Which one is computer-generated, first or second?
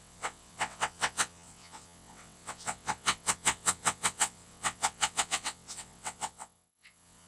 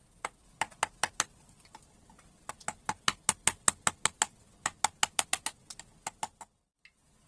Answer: first